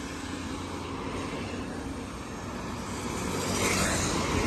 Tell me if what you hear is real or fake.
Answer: real